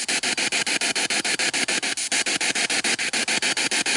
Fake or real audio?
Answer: real